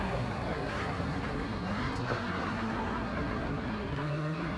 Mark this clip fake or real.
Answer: fake